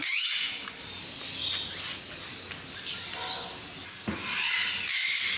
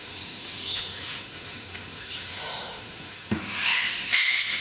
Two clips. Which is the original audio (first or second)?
first